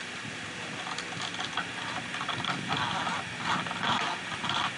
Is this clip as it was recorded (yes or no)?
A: yes